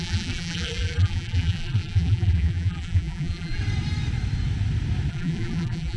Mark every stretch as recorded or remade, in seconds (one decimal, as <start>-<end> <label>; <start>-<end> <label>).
0.0-3.6 remade; 3.6-5.1 recorded; 5.1-6.0 remade